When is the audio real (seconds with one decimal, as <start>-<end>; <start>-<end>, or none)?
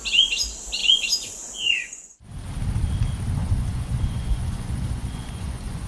0.0-0.8; 2.2-3.4